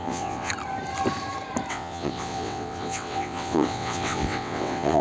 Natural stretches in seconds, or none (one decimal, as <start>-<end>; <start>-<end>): 0.5-1.7

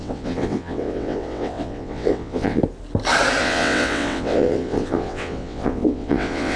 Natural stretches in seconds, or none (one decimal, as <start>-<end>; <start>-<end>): 2.6-3.4

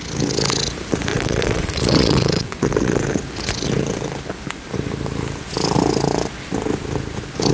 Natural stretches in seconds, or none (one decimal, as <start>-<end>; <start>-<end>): 0.0-1.1; 3.1-7.5

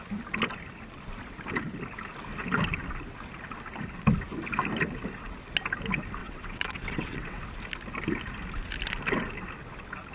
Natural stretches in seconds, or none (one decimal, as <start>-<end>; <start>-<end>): 0.0-6.2; 7.4-10.1

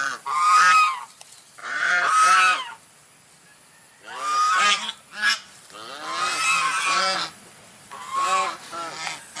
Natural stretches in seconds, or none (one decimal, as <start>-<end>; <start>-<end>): 0.0-1.6; 2.1-9.4

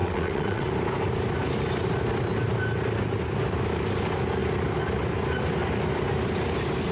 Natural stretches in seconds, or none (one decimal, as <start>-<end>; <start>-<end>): 0.7-6.9

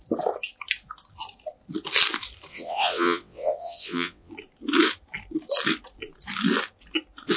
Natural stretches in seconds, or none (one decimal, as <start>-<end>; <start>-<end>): 0.0-2.5; 4.3-7.4